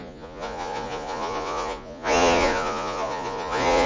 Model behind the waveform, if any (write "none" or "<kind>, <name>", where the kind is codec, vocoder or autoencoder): vocoder, Vocos